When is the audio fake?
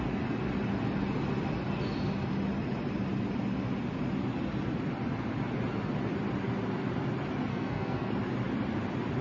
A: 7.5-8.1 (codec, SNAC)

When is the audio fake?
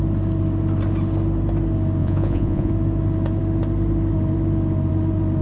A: 2.0-2.7 (vocoder, Vocos)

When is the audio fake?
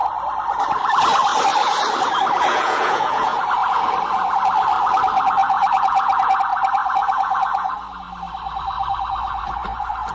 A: 2.5-3.4 (vocoder, Vocos); 5.4-6.4; 7.0-7.7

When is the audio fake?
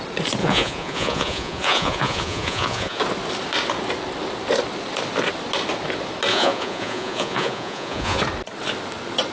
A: 0.4-3.0 (vocoder, Vocos); 6.3-8.2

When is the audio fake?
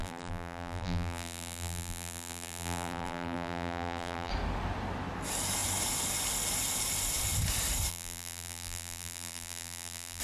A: 0.0-4.3 (vocoder, BigVGAN v2); 7.9-10.2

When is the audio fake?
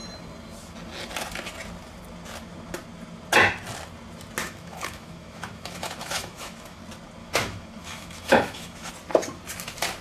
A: 4.4-6.8 (autoencoder, DAC-VAE); 7.2-8.9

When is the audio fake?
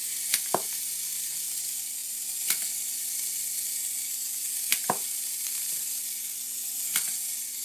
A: none